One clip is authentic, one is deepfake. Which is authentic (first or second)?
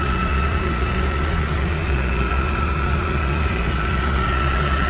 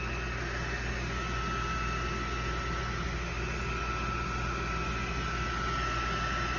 second